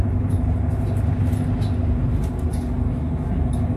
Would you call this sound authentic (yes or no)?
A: yes